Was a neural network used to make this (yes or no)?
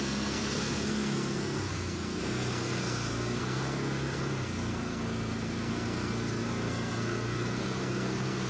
yes